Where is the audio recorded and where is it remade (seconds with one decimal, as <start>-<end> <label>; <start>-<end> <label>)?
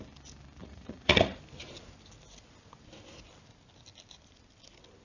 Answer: 0.0-0.6 recorded; 0.6-1.4 remade; 1.4-5.0 recorded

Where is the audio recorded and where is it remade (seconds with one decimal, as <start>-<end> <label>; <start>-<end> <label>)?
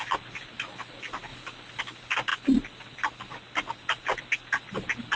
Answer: 0.0-5.2 recorded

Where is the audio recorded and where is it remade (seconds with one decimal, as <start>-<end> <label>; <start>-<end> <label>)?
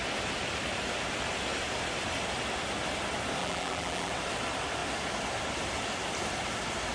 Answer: 0.0-3.4 recorded; 3.4-4.1 remade; 4.1-6.9 recorded